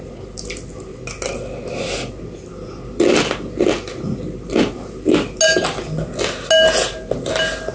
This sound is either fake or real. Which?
real